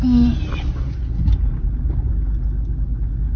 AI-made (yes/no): no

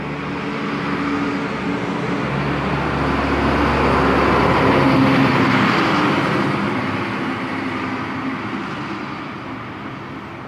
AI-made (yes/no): no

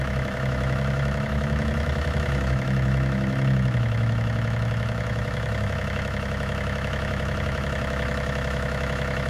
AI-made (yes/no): yes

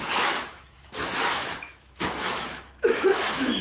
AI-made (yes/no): yes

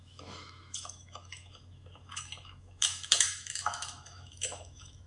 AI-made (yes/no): yes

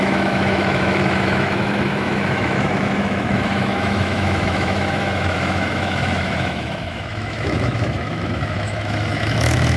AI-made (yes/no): yes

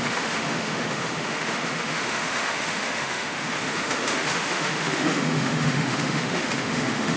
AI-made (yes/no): yes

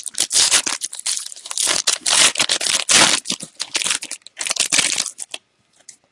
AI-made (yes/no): no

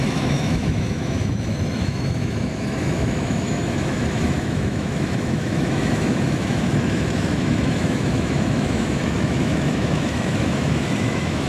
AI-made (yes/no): yes